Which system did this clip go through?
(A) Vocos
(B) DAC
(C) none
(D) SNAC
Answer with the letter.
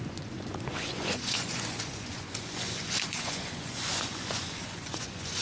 A